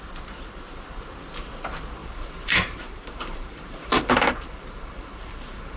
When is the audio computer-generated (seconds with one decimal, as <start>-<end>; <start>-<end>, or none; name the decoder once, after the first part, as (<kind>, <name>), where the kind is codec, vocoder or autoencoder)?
2.0-5.8 (vocoder, BigVGAN v2)